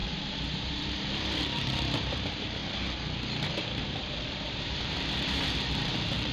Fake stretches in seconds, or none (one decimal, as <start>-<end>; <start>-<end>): 0.0-2.6; 3.5-6.3